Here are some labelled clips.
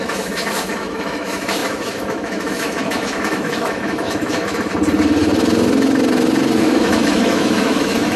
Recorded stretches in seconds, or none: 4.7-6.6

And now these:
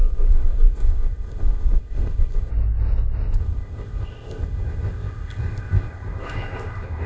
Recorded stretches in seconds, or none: 2.5-3.4